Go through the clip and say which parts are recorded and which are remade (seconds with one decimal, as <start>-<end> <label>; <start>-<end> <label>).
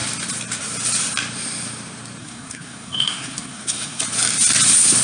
0.0-2.2 recorded; 2.2-4.0 remade; 4.0-5.0 recorded